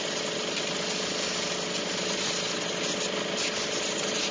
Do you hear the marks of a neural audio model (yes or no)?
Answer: no